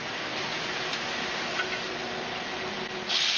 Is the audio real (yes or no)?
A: yes